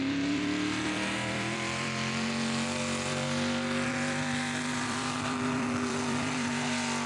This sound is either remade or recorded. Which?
remade